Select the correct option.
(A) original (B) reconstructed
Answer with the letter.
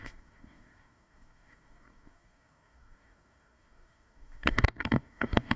B